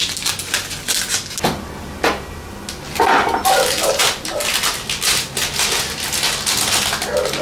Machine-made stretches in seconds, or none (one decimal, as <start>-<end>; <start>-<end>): 4.0-4.5